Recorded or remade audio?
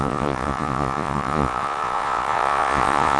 remade